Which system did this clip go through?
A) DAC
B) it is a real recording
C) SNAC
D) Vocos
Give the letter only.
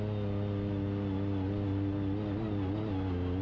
B